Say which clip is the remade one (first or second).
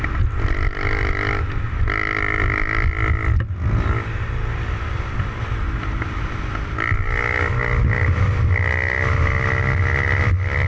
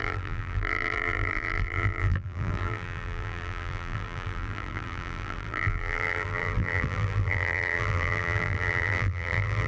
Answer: second